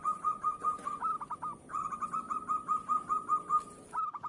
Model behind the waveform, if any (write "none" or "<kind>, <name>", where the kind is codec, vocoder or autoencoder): none